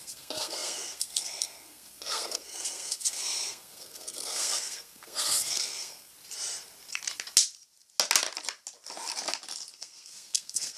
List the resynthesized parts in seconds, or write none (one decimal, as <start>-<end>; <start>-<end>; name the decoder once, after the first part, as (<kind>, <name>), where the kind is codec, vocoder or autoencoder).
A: 0.0-6.1 (codec, SNAC); 9.7-10.8